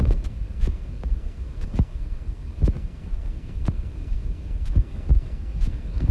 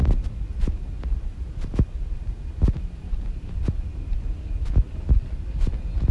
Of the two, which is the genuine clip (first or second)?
second